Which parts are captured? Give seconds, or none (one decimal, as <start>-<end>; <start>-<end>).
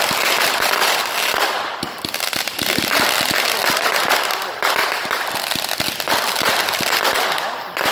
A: 0.0-7.9